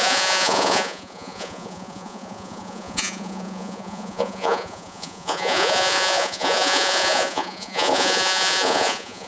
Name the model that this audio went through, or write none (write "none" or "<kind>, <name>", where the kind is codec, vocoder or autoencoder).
vocoder, Vocos